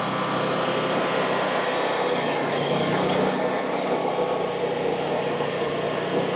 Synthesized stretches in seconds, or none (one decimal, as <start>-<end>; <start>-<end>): 2.4-4.1; 4.9-5.7